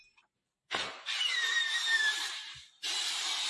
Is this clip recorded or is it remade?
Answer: remade